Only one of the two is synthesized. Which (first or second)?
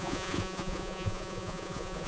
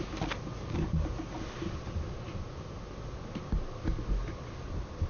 first